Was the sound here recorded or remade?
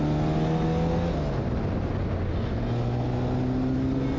recorded